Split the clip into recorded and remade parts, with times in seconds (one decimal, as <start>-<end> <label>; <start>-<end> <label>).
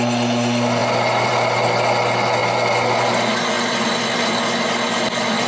0.0-5.5 recorded